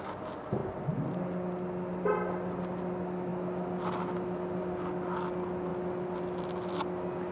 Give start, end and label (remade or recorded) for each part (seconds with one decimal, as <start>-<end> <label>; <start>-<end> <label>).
0.0-7.3 recorded